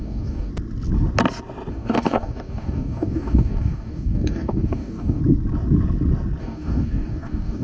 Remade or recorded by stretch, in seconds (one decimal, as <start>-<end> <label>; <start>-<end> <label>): 0.0-0.5 remade; 0.5-1.7 recorded; 1.7-5.2 remade; 5.2-6.4 recorded; 6.4-7.6 remade